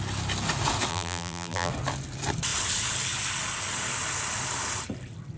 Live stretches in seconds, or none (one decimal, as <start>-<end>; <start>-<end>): 0.0-0.9; 1.7-5.4